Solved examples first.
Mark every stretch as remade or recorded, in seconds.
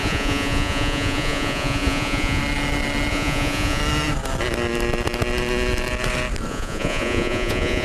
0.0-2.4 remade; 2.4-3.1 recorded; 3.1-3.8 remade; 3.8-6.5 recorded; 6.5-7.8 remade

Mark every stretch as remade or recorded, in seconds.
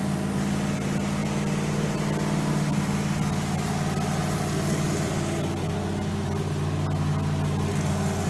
0.0-8.3 recorded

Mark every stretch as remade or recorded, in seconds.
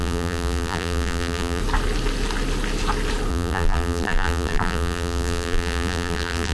0.0-1.6 remade; 1.6-3.3 recorded; 3.3-6.5 remade